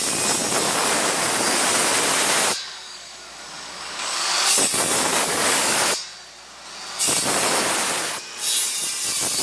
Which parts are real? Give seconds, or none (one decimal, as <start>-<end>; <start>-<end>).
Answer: 0.0-2.7; 4.6-5.1; 5.8-9.4